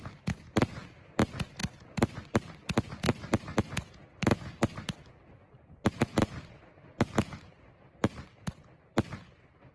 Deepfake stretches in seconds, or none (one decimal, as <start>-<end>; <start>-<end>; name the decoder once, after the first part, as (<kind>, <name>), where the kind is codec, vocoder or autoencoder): none